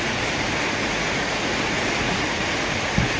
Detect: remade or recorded remade